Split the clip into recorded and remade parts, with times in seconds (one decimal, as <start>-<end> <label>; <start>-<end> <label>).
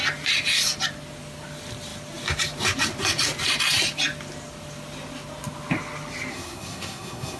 0.0-6.3 recorded; 6.3-7.4 remade